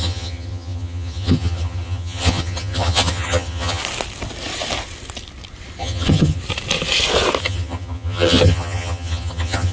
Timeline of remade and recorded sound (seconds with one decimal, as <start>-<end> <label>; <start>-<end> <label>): 0.0-3.8 remade; 3.8-5.8 recorded; 5.8-6.4 remade; 6.4-7.4 recorded; 7.4-9.7 remade